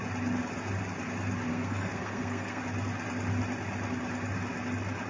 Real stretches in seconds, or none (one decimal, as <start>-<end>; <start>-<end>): 0.0-1.5; 2.6-5.1